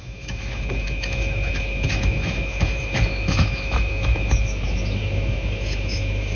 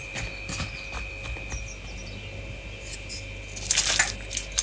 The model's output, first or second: first